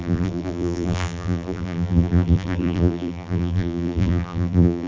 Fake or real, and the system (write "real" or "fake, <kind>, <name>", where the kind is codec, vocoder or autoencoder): fake, vocoder, BigVGAN v2